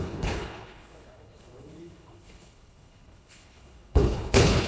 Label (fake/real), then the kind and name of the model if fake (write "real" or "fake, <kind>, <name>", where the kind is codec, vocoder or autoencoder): fake, codec, HILCodec